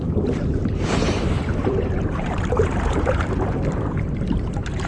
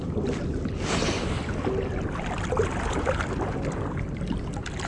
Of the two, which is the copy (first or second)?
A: first